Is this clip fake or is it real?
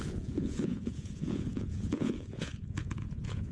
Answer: fake